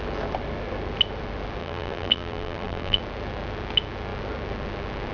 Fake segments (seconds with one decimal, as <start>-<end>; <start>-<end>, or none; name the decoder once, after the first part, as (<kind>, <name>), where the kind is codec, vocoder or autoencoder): 1.6-3.0 (vocoder, BigVGAN v2)